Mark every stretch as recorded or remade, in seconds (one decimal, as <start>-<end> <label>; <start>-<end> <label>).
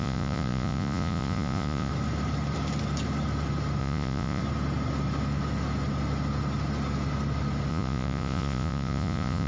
0.0-1.9 remade; 1.9-3.8 recorded; 3.8-4.4 remade; 4.4-7.7 recorded; 7.7-9.5 remade